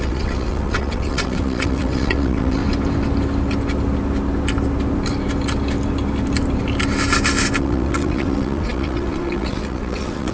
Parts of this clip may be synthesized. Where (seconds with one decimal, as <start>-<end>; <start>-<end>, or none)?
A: 0.0-2.6; 7.6-10.3